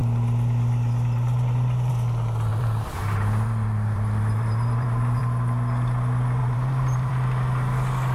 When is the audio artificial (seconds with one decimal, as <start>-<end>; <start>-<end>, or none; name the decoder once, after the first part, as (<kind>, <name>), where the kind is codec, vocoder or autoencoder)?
2.5-5.2 (vocoder, BigVGAN v2); 6.4-7.1